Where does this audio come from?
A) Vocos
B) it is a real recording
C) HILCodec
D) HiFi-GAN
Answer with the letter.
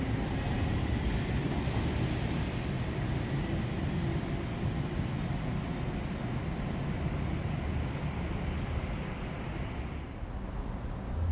B